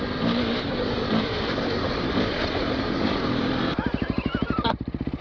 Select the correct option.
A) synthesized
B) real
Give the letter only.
A